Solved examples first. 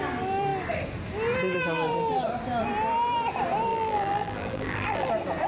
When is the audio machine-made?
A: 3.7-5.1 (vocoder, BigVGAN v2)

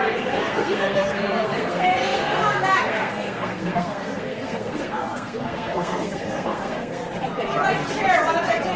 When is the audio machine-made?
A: 0.0-7.0 (codec, SNAC)

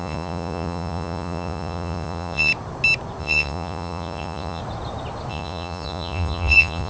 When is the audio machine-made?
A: 0.0-2.5 (vocoder, Vocos); 3.2-4.6; 5.3-6.9

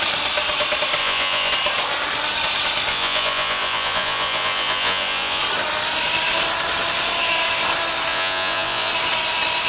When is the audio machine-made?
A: 1.0-1.5 (vocoder, Vocos); 2.9-5.4; 8.1-8.9

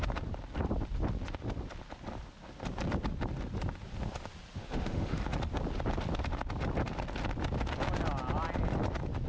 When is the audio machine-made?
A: 4.6-5.2 (autoencoder, DAC-VAE)

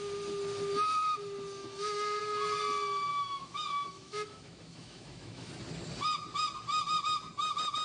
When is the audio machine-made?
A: 1.6-2.2 (autoencoder, DAC-VAE); 3.1-5.5

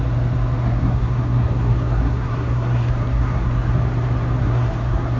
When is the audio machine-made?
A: 0.6-3.7 (codec, SNAC); 4.4-5.2

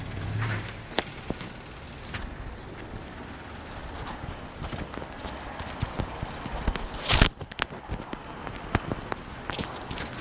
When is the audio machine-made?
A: none